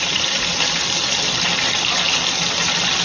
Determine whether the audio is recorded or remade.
recorded